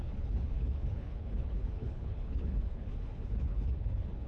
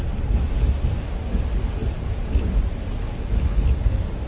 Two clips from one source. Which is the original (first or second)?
second